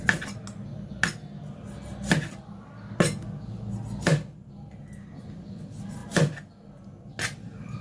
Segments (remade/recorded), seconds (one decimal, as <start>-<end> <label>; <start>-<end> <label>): 0.0-7.8 recorded